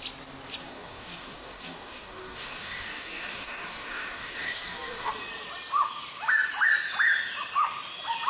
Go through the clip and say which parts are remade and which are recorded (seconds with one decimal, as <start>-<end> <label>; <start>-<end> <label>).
0.0-0.6 recorded; 0.6-5.1 remade; 5.1-8.3 recorded